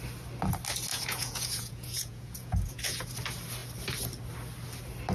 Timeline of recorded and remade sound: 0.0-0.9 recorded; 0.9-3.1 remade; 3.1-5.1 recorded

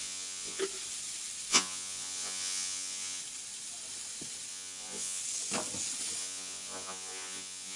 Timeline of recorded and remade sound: 0.0-0.6 remade; 0.6-1.5 recorded; 1.5-3.2 remade; 3.2-4.5 recorded; 4.5-5.2 remade; 5.2-6.2 recorded; 6.2-7.8 remade

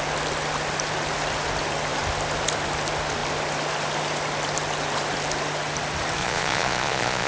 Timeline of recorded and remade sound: 0.0-6.2 recorded; 6.2-7.3 remade

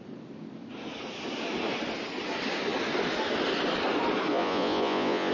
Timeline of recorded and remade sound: 0.0-4.3 recorded; 4.3-5.3 remade

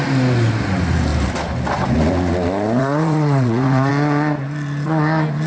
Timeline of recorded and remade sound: 0.0-2.8 recorded; 2.8-3.9 remade; 3.9-5.5 recorded

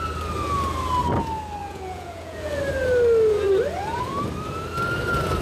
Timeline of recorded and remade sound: 0.0-1.6 recorded; 1.6-2.6 remade; 2.6-5.4 recorded